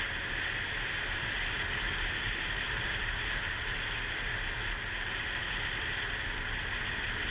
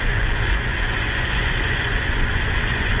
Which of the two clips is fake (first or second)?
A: second